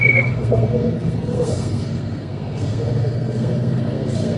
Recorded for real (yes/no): no